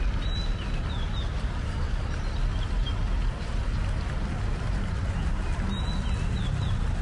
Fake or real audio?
real